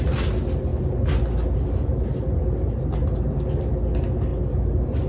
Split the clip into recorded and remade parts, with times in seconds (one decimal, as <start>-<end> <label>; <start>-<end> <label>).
0.0-5.1 recorded